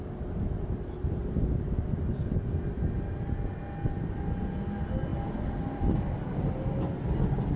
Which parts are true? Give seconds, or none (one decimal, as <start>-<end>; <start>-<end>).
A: 0.0-1.2; 1.8-7.6